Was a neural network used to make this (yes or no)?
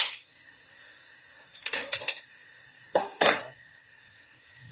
yes